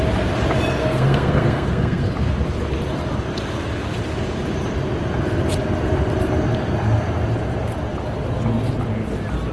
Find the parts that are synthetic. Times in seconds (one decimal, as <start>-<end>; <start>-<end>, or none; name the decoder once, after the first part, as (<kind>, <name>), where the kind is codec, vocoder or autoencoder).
0.8-2.1 (codec, SNAC)